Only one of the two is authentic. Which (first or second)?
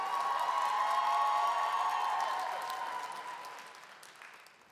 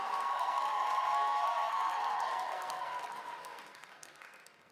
first